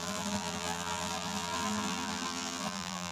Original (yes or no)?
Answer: no